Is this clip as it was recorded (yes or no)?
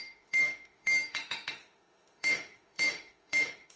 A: no